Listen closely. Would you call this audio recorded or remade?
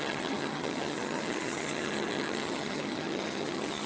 remade